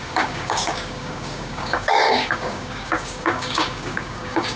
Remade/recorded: remade